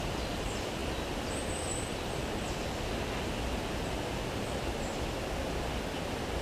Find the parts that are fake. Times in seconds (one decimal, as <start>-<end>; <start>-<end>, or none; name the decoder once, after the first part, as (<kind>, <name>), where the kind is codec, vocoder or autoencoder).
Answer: none